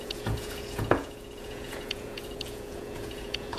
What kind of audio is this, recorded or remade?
remade